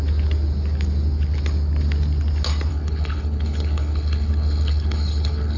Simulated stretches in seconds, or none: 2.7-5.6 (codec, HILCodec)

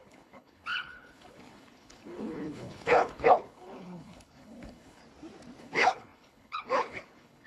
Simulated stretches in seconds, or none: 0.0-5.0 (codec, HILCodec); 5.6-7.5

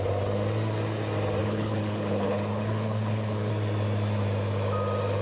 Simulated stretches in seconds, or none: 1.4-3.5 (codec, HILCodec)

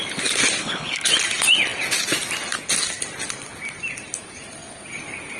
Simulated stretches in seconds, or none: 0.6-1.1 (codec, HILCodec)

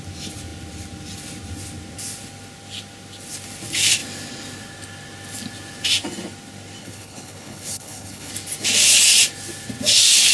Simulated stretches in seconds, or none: 6.8-8.3 (codec, HILCodec)